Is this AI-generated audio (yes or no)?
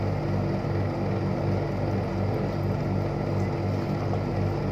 no